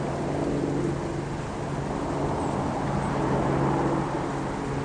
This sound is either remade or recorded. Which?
recorded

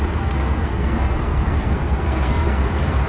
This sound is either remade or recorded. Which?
remade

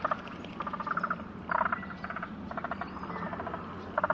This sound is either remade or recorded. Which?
recorded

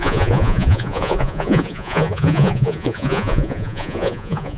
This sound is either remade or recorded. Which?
remade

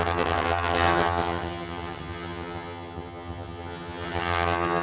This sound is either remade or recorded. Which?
remade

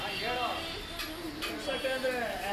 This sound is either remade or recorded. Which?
recorded